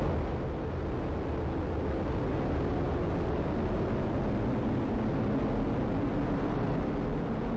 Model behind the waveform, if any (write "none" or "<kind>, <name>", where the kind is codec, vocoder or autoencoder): none